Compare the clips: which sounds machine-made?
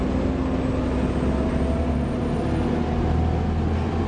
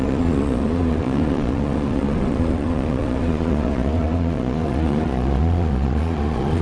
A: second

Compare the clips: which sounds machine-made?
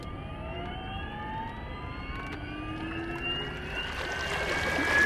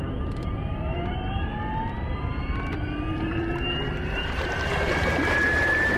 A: second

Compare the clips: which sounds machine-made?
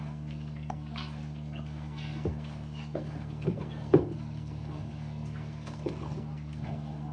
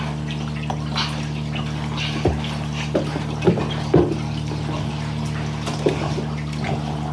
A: first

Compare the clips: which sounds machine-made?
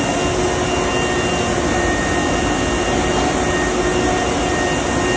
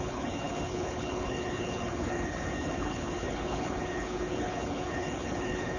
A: second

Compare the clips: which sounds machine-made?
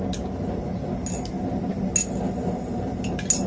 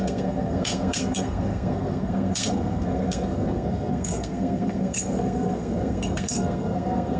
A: second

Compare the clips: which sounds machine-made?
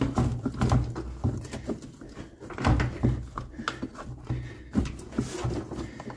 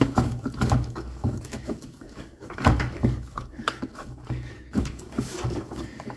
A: second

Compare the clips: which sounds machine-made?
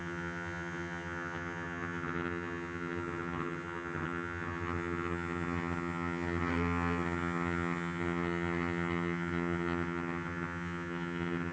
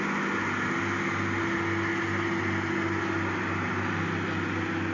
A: first